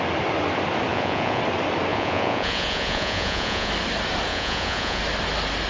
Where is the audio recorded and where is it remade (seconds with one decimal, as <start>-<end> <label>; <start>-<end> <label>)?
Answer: 0.0-0.9 recorded; 0.9-1.4 remade; 1.4-1.9 recorded; 1.9-3.7 remade; 3.7-4.3 recorded; 4.3-5.0 remade; 5.0-5.7 recorded